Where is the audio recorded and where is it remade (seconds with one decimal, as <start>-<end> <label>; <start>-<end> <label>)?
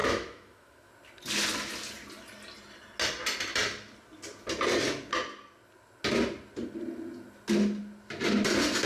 0.0-0.9 remade; 0.9-8.9 recorded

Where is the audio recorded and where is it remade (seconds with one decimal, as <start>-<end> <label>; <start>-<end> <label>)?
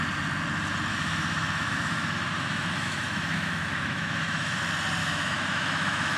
0.0-0.9 recorded; 0.9-4.6 remade; 4.6-5.0 recorded; 5.0-6.2 remade